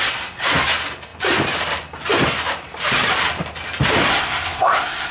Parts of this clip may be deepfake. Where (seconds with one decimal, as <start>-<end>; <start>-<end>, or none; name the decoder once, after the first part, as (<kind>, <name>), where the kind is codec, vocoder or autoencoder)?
4.1-5.1 (codec, SNAC)